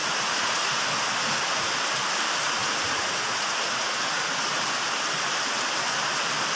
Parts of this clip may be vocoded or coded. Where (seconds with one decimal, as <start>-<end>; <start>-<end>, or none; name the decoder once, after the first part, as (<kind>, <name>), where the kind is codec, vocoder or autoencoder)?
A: 0.0-0.8 (vocoder, Vocos); 2.6-4.6